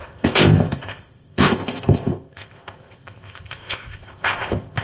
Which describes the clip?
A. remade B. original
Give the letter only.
A